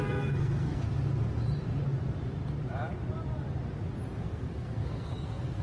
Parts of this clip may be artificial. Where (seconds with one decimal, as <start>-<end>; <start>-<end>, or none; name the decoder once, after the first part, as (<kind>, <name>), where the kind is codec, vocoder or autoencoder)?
0.0-0.8 (codec, SNAC); 4.2-5.6